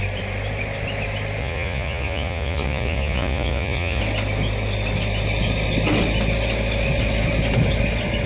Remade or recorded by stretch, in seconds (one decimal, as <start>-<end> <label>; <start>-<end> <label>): 0.0-1.4 recorded; 1.4-4.0 remade; 4.0-8.3 recorded